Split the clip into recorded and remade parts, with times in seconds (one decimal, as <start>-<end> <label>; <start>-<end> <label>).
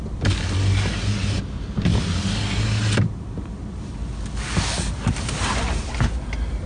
0.0-1.2 recorded; 1.2-1.9 remade; 1.9-4.9 recorded; 4.9-6.7 remade